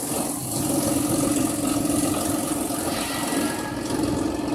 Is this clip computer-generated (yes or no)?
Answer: no